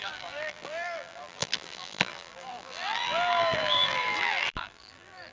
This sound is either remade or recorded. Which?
remade